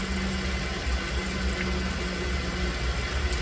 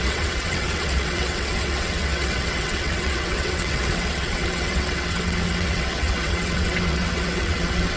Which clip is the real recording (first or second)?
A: first